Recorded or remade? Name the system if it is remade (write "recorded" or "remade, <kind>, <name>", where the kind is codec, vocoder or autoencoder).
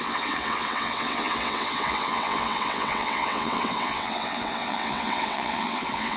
remade, vocoder, WaveNeXt